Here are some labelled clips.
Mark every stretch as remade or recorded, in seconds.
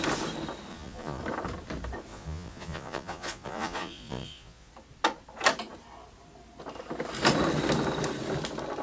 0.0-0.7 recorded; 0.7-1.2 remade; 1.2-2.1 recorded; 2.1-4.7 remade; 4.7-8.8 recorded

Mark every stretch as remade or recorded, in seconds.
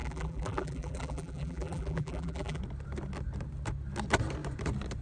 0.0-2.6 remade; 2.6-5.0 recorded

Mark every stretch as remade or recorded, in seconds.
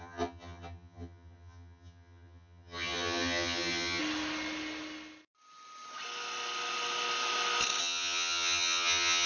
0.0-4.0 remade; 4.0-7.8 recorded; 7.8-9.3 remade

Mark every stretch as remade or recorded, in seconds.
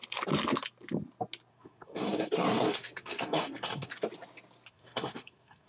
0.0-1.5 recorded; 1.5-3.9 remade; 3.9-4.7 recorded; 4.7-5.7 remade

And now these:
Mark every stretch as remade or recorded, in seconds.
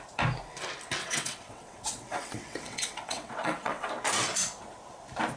0.0-1.0 recorded; 1.0-3.9 remade; 3.9-5.4 recorded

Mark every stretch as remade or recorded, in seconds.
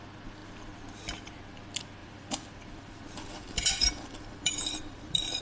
0.0-2.0 recorded; 2.0-5.4 remade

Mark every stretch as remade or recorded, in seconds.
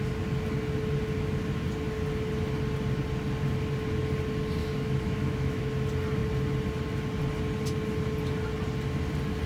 0.0-4.6 recorded; 4.6-5.6 remade; 5.6-9.5 recorded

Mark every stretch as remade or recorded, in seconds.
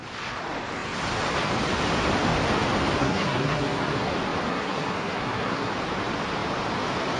0.0-3.0 recorded; 3.0-4.1 remade; 4.1-4.5 recorded; 4.5-5.7 remade; 5.7-7.2 recorded